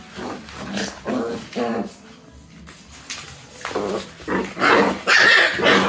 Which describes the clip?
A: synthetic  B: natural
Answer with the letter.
B